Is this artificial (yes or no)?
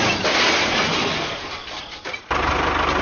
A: no